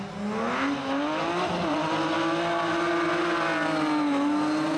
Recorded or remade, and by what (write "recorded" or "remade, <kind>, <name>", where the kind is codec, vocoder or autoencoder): recorded